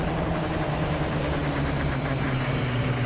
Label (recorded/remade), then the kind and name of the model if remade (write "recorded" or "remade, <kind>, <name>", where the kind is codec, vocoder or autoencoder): remade, vocoder, BigVGAN v2